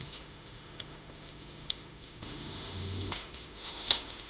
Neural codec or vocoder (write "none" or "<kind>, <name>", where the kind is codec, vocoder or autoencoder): autoencoder, DAC-VAE